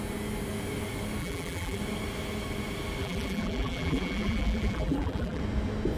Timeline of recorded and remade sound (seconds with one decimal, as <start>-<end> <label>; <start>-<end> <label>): 0.0-1.2 recorded; 1.2-1.8 remade; 1.8-3.0 recorded; 3.0-5.4 remade; 5.4-6.0 recorded